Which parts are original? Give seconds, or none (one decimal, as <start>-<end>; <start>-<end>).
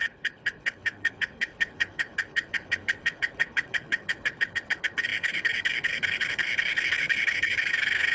none